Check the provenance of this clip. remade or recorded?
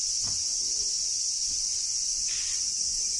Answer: remade